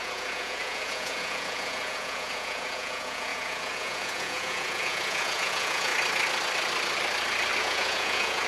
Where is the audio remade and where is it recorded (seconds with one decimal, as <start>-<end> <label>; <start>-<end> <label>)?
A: 0.0-5.9 remade; 5.9-7.6 recorded; 7.6-8.5 remade

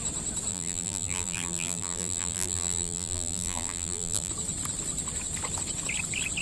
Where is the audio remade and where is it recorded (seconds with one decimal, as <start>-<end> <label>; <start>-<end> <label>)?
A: 0.0-0.5 recorded; 0.5-4.3 remade; 4.3-6.4 recorded

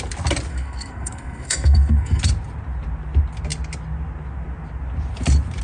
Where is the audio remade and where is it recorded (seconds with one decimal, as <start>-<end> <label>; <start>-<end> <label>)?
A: 0.0-0.5 recorded; 0.5-2.2 remade; 2.2-5.6 recorded

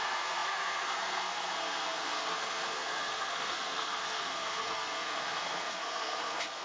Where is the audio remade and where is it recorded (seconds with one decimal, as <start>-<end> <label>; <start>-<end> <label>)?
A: 0.0-6.6 remade

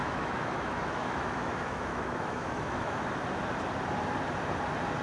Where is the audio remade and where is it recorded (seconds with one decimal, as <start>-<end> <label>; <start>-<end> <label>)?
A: 0.0-3.0 remade; 3.0-5.0 recorded